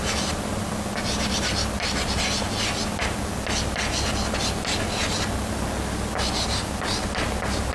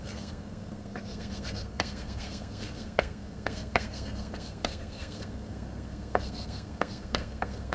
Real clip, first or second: first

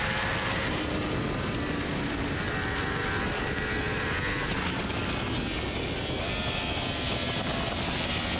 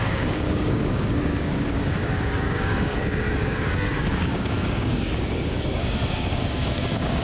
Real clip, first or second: first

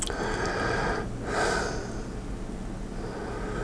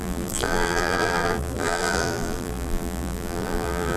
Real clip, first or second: first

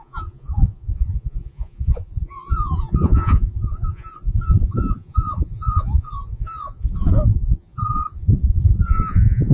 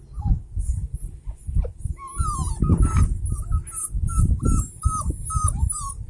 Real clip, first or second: second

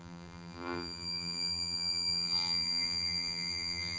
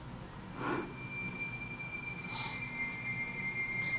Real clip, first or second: second